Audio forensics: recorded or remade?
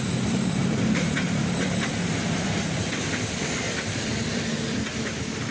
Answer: remade